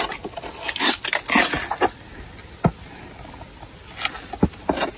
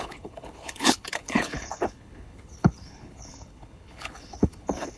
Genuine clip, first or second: first